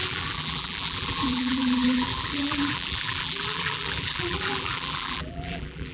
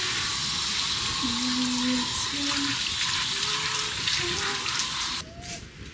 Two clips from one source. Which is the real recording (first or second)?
second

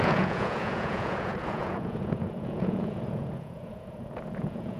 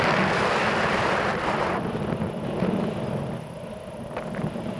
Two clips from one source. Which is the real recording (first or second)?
second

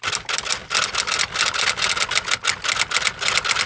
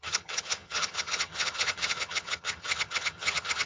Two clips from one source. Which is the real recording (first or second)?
first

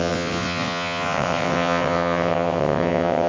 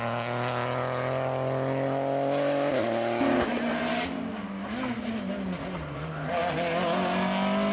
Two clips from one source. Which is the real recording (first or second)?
second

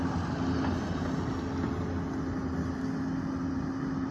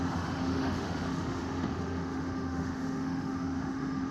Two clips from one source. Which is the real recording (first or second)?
first